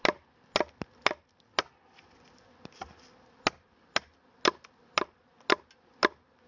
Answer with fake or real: real